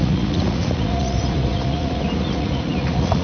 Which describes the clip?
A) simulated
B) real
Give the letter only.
A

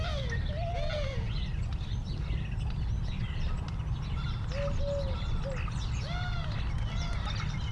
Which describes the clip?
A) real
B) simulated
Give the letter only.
A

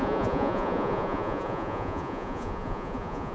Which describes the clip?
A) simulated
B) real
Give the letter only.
A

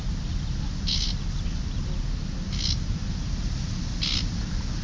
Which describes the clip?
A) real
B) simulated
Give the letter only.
A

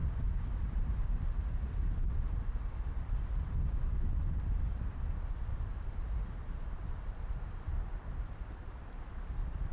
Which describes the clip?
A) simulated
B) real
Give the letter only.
B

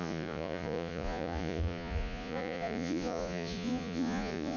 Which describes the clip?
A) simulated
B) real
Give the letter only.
A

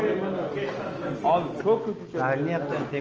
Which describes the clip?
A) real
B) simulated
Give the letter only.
A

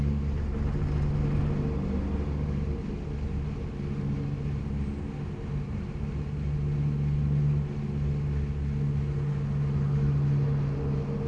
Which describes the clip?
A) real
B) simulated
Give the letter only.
A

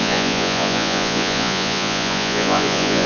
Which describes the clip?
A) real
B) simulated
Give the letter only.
B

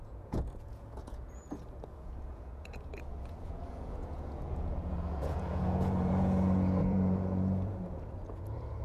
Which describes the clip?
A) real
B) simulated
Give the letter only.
B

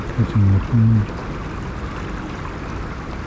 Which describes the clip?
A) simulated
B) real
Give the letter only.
B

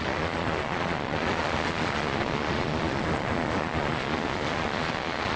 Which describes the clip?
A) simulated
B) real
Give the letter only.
A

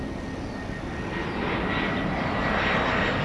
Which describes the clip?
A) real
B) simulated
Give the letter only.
A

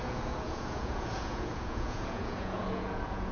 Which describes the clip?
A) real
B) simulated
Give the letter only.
B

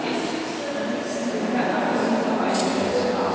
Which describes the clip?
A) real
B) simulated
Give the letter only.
A